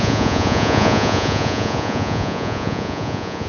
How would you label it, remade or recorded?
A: remade